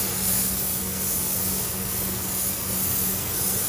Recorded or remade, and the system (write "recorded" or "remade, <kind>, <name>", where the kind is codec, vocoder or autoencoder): remade, codec, SNAC